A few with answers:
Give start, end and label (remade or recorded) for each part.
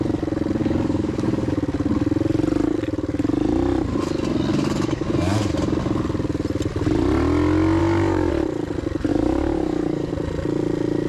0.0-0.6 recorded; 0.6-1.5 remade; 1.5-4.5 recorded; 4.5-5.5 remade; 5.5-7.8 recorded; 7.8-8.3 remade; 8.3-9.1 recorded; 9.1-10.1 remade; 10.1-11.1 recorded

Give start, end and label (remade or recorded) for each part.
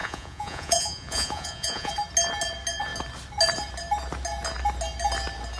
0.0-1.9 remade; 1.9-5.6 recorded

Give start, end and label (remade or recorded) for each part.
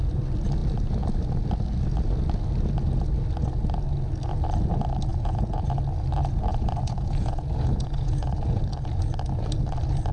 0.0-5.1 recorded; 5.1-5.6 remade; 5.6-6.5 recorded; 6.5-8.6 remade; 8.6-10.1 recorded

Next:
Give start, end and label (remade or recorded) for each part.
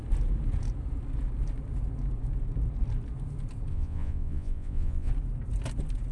0.0-3.7 recorded; 3.7-5.1 remade; 5.1-6.1 recorded